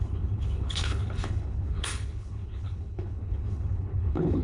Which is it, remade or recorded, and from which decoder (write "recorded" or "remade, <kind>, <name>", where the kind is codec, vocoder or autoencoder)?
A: remade, codec, HILCodec